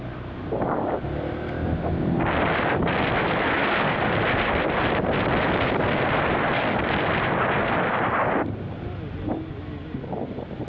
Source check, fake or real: real